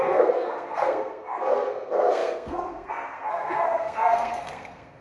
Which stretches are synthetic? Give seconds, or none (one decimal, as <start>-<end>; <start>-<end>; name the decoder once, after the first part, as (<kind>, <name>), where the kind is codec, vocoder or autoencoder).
0.0-5.0 (codec, SNAC)

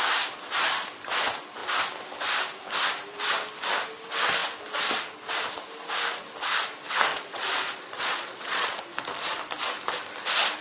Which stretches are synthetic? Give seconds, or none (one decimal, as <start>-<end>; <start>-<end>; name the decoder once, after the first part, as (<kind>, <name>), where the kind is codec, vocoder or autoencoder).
7.1-8.8 (vocoder, Vocos)

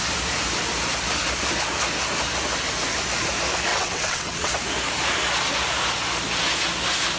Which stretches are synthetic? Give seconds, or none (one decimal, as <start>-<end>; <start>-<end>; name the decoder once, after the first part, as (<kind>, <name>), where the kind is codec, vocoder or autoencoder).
3.7-4.5 (vocoder, WaveNeXt)